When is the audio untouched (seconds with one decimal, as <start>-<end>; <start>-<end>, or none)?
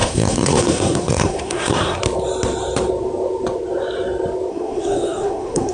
2.0-4.5